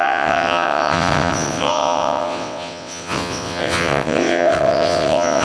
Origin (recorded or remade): remade